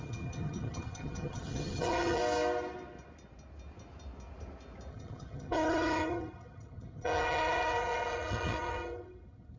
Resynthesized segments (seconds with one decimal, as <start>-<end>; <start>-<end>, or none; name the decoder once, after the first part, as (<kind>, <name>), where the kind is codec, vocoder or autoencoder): 0.0-2.2 (vocoder, HiFi-GAN); 4.9-9.6